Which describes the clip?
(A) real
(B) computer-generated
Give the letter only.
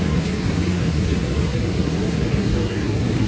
B